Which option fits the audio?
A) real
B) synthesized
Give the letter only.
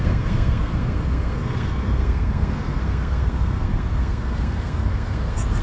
B